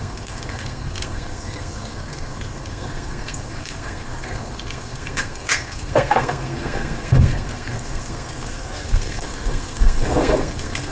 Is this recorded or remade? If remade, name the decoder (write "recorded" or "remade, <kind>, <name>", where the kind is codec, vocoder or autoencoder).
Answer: remade, codec, SNAC